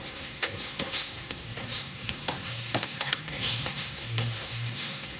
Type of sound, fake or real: fake